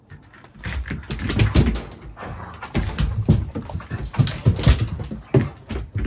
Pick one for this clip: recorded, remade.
recorded